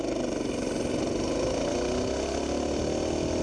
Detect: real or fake real